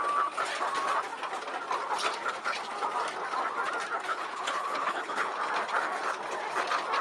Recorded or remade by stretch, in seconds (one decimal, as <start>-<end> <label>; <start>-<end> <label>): 0.0-4.1 recorded; 4.1-5.4 remade; 5.4-7.0 recorded